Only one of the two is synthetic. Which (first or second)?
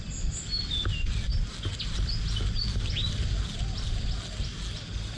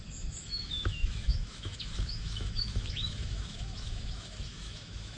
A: second